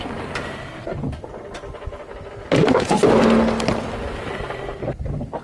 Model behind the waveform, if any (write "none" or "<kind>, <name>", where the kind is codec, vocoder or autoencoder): none